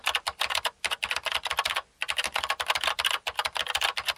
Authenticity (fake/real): real